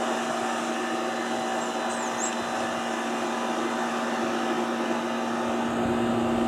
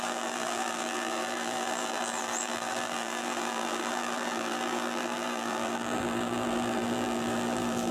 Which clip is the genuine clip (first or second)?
first